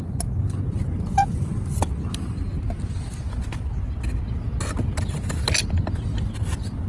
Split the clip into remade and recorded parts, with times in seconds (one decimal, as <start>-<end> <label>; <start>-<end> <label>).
0.0-6.9 recorded